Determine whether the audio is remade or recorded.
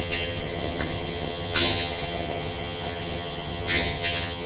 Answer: remade